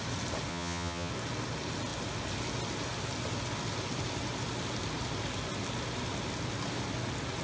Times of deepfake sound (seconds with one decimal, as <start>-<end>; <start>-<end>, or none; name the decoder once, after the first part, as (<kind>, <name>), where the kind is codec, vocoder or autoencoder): 0.5-1.1 (vocoder, HiFi-GAN)